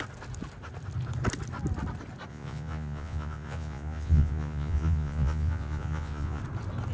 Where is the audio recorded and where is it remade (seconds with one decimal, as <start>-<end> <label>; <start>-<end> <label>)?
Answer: 0.0-2.3 recorded; 2.3-6.4 remade; 6.4-6.9 recorded